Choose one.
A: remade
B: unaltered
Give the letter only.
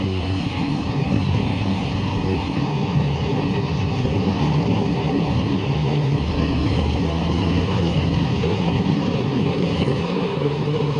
A